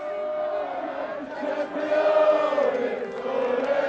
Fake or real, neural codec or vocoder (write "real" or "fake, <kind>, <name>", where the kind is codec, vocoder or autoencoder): real